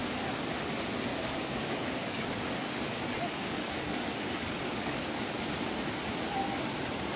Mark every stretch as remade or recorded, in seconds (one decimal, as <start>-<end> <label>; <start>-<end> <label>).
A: 0.0-1.1 recorded; 1.1-5.4 remade; 5.4-7.2 recorded